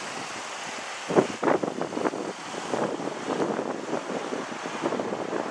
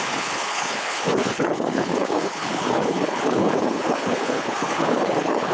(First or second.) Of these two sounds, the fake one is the second